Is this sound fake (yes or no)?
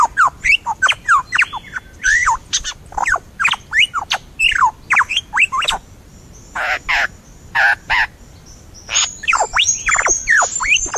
yes